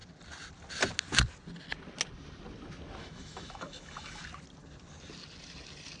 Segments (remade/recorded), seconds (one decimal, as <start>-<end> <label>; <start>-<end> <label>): 0.0-3.0 recorded; 3.0-4.2 remade; 4.2-6.0 recorded